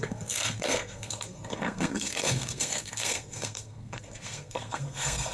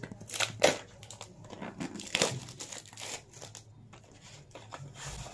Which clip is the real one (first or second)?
second